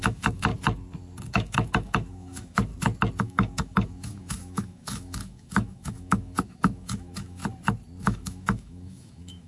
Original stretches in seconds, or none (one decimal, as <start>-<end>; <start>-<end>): 0.5-1.3; 2.7-3.2; 7.4-8.0